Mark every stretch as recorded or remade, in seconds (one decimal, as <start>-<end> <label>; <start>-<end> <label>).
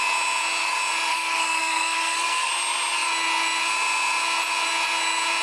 0.0-1.1 recorded; 1.1-2.5 remade; 2.5-5.4 recorded